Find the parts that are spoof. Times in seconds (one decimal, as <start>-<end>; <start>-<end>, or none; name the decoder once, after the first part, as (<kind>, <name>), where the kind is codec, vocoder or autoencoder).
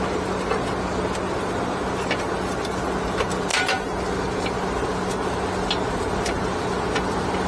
none